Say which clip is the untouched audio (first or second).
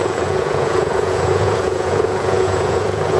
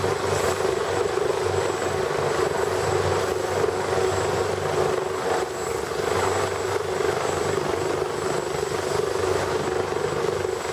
second